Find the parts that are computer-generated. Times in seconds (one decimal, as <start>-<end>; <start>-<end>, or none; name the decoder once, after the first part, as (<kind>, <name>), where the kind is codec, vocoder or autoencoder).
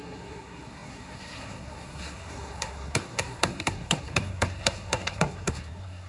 0.0-6.1 (codec, SNAC)